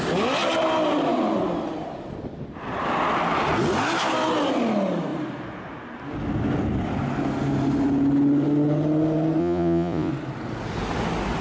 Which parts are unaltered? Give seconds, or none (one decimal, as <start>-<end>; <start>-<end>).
0.0-9.4; 10.1-11.4